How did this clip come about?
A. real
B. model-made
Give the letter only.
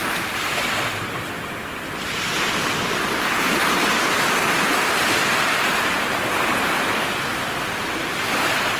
A